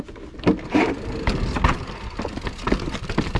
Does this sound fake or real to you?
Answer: real